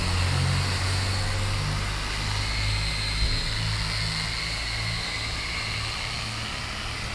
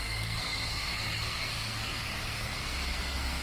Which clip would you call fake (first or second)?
second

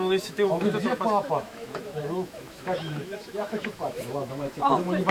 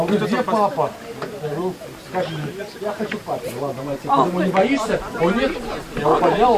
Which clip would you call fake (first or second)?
first